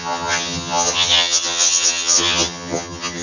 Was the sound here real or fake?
fake